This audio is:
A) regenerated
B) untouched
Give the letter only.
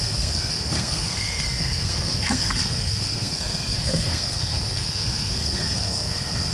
A